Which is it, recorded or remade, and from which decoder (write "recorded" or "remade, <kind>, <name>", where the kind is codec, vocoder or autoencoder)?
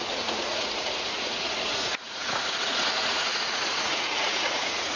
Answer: remade, vocoder, Vocos